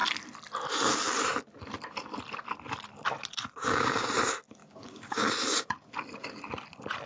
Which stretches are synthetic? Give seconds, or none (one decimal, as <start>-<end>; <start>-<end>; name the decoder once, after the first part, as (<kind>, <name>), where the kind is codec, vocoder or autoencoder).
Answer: 3.6-4.1 (codec, DAC); 4.6-5.3